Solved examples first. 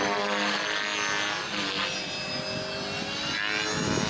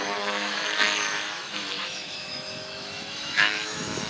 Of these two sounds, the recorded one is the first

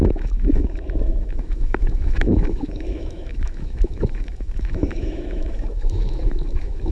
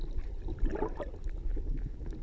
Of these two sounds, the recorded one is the second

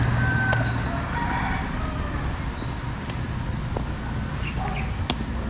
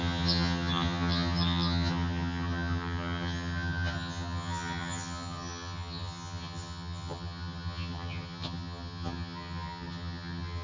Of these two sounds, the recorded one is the first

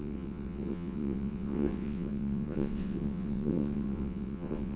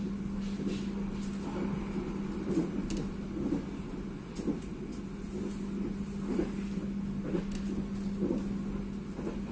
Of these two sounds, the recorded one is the second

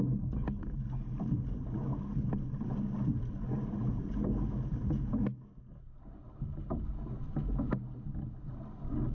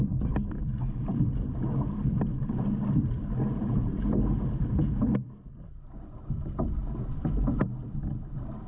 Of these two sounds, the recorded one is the first